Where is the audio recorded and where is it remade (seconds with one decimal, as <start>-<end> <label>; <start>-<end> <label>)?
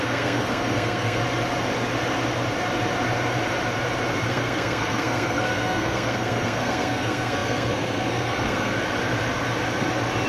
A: 0.0-1.2 remade; 1.2-4.3 recorded; 4.3-8.7 remade; 8.7-10.3 recorded